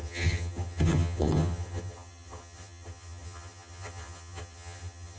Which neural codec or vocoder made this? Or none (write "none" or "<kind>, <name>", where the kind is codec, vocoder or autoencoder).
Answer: vocoder, HiFi-GAN